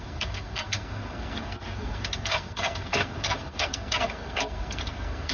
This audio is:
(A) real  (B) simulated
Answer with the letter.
B